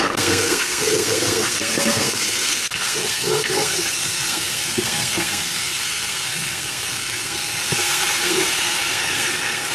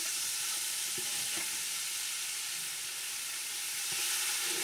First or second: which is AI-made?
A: first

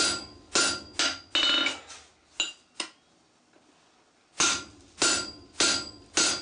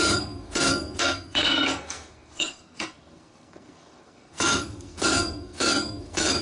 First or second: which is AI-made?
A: second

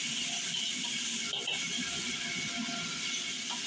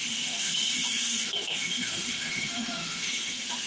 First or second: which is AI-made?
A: second